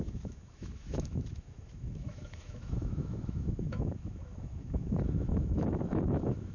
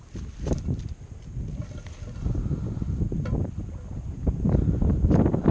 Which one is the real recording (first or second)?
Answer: second